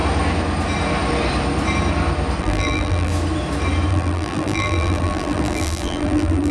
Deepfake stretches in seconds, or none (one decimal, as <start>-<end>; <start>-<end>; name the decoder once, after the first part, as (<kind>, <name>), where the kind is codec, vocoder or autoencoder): 2.4-3.1 (vocoder, BigVGAN v2); 3.9-6.5